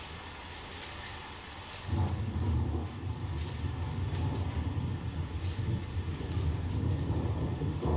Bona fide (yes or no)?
yes